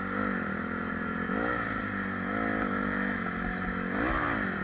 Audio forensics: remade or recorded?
recorded